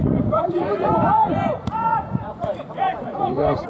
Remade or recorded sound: remade